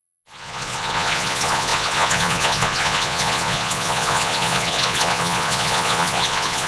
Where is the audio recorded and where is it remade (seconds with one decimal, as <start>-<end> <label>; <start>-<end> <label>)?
0.0-6.7 remade

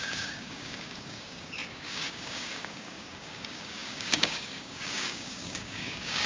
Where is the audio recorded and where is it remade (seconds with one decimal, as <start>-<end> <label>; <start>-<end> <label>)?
0.0-6.3 remade